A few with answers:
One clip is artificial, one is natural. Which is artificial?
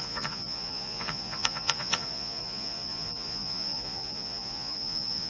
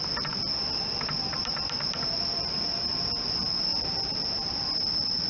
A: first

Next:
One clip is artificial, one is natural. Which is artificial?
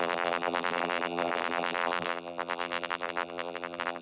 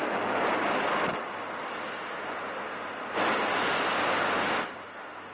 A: first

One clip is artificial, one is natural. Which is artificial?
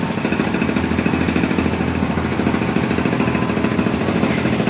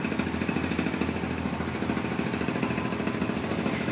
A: second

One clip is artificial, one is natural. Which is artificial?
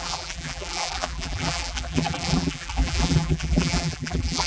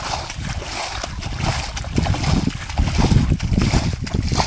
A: first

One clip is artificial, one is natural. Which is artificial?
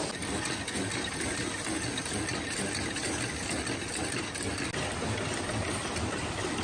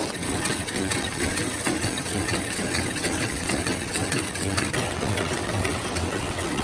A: second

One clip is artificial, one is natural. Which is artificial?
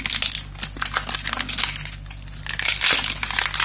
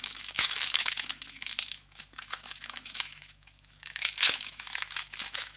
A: second